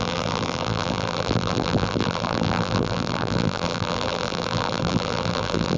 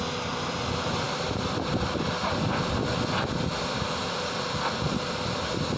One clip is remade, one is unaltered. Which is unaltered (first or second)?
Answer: second